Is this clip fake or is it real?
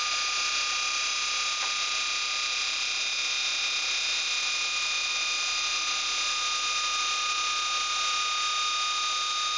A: real